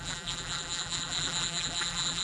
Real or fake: fake